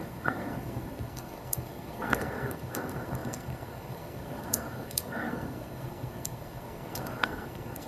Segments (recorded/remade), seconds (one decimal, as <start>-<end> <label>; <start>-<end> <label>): 0.0-7.9 remade